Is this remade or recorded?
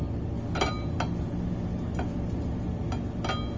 recorded